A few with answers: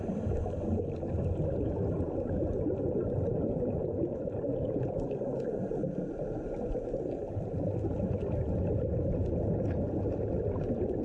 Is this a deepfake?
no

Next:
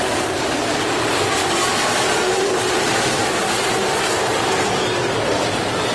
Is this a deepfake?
yes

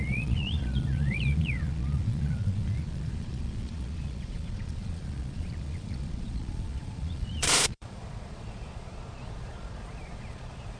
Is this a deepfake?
yes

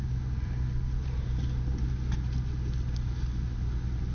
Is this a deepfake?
no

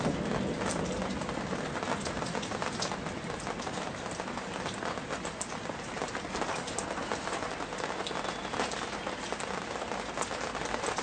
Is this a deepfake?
no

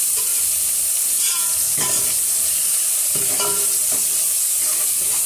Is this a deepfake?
yes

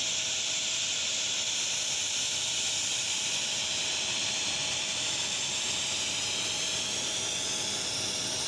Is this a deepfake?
no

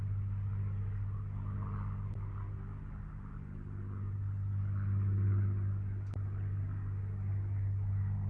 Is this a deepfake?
no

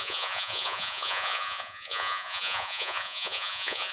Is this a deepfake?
yes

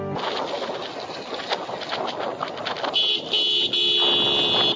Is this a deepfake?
no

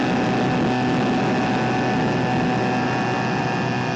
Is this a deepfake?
no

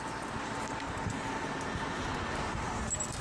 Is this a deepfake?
no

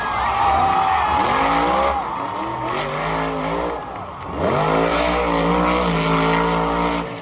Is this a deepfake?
no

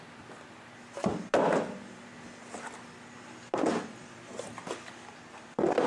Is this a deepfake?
no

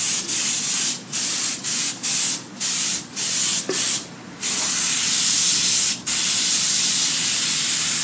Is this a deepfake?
no